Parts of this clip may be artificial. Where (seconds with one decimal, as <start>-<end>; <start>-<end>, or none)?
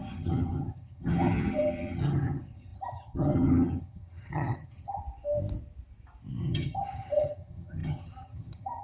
0.0-5.0; 6.4-8.8